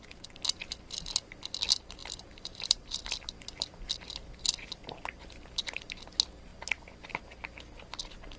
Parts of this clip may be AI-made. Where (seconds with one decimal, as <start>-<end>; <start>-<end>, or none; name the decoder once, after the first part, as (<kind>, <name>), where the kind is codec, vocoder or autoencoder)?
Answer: 2.0-5.5 (vocoder, BigVGAN v2)